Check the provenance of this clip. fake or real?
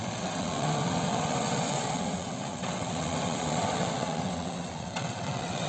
fake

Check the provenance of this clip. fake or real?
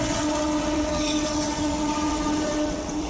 fake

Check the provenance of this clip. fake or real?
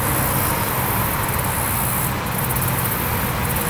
real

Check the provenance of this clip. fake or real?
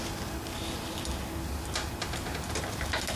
real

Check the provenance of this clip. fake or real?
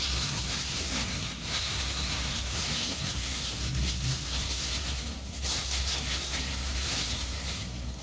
fake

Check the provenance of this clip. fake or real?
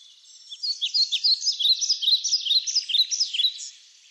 real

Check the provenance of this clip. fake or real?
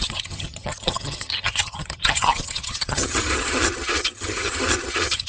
fake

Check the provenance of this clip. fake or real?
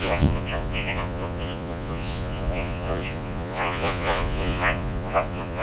fake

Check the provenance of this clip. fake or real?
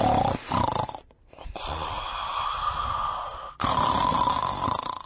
real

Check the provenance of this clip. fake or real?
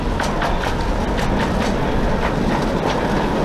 real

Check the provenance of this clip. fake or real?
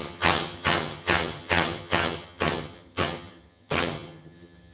fake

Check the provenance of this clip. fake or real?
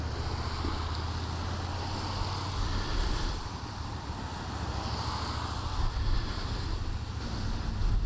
real